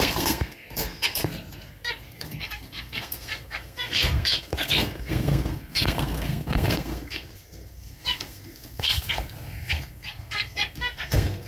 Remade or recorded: remade